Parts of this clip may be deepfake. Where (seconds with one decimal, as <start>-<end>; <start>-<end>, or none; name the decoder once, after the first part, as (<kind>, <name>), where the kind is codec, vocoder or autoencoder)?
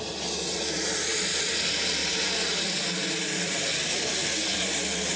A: none